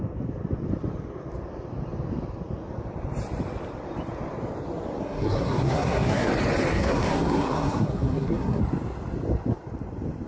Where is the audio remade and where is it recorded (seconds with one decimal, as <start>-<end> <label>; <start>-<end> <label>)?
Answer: 0.0-5.0 recorded; 5.0-6.3 remade; 6.3-6.7 recorded; 6.7-8.6 remade; 8.6-10.3 recorded